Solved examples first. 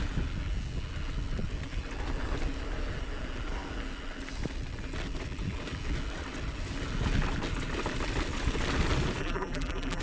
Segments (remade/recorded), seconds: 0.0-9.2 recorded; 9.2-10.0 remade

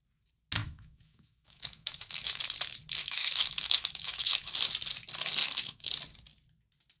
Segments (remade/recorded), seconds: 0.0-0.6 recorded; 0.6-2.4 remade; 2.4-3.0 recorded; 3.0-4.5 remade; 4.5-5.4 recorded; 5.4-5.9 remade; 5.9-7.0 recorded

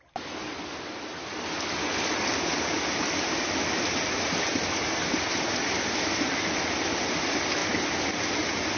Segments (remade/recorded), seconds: 0.0-8.8 recorded